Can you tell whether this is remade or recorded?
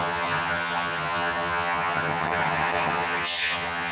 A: remade